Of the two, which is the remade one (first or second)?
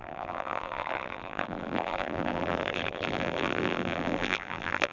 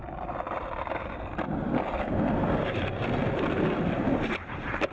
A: first